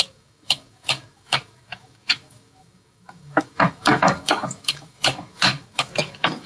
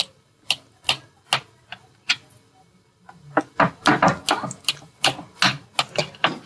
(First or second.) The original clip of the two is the second